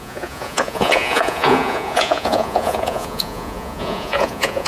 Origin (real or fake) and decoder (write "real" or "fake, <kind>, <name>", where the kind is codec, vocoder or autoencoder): fake, vocoder, Vocos